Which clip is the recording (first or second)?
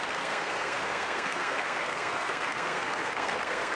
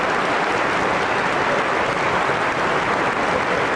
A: second